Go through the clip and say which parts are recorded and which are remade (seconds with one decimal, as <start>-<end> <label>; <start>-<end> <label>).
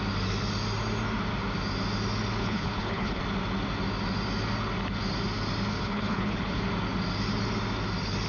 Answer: 0.0-2.4 recorded; 2.4-3.2 remade; 3.2-5.7 recorded; 5.7-6.6 remade; 6.6-8.3 recorded